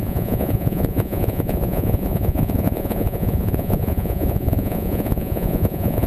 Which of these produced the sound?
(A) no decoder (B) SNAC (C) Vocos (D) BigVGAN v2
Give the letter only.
C